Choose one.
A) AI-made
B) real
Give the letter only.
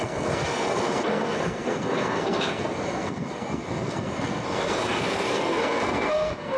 A